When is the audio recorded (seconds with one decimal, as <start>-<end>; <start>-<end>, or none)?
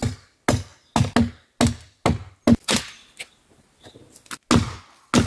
0.0-5.3